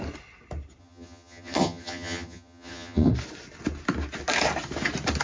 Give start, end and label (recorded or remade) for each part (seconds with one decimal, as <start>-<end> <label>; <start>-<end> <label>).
0.0-0.8 recorded; 0.8-3.1 remade; 3.1-5.2 recorded